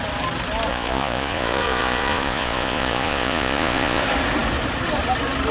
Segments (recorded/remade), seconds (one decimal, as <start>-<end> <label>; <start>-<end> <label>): 0.0-0.7 recorded; 0.7-4.0 remade; 4.0-5.5 recorded